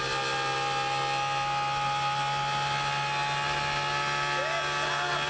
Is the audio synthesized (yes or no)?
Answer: no